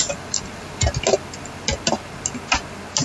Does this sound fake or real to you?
real